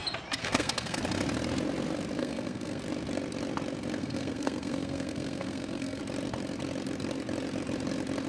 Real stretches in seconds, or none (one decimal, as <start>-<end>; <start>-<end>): 0.0-0.4; 1.0-2.2; 2.8-4.0; 6.0-8.3